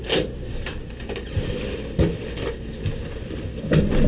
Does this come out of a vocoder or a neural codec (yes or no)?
no